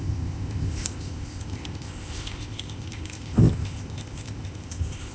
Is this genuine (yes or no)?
no